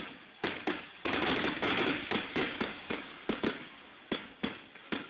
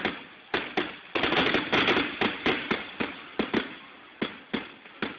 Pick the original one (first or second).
second